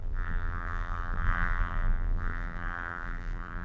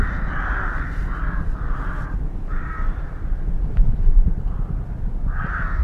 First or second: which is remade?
first